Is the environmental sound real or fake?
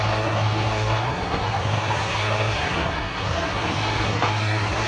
fake